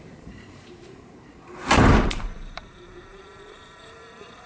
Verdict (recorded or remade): remade